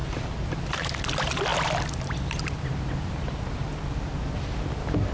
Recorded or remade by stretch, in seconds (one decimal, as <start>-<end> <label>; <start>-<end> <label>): 0.0-5.1 recorded